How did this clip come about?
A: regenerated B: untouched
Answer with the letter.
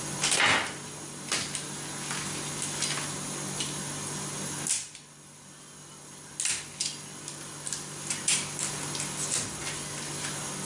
B